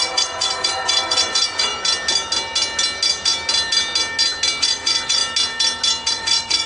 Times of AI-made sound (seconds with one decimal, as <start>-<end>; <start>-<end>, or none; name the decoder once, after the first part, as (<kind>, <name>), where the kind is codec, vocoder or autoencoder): 0.0-1.7 (vocoder, Vocos); 4.6-5.2; 6.1-6.7